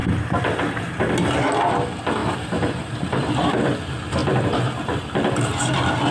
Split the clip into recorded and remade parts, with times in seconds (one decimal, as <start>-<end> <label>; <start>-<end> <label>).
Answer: 0.0-1.1 remade; 1.1-2.2 recorded; 2.2-3.6 remade; 3.6-4.2 recorded; 4.2-5.5 remade; 5.5-6.1 recorded